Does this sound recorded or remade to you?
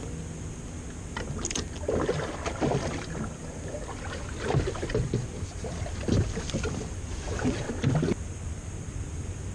recorded